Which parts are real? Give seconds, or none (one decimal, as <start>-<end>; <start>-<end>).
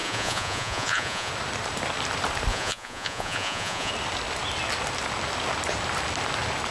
1.3-2.5; 3.9-6.7